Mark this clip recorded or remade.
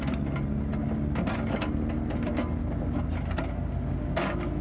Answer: recorded